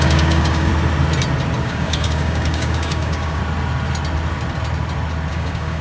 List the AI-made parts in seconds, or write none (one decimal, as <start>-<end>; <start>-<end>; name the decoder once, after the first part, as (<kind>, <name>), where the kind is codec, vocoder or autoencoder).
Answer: 0.0-0.7 (codec, DAC); 1.6-3.4; 5.3-5.8